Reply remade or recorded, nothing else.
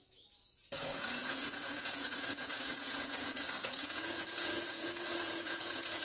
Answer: remade